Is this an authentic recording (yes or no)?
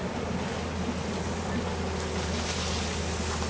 yes